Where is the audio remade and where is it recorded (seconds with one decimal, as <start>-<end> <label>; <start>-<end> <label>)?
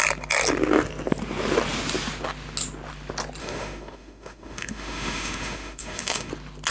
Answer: 0.0-3.4 recorded; 3.4-6.3 remade; 6.3-6.7 recorded